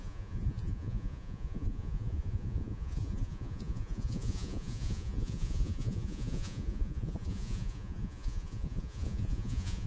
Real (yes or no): no